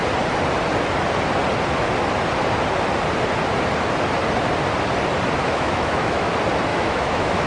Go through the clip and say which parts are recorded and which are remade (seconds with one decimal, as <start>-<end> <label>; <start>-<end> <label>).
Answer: 0.0-5.4 recorded; 5.4-6.3 remade; 6.3-6.7 recorded; 6.7-7.5 remade